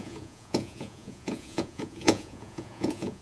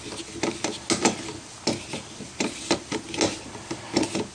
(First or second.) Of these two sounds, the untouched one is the second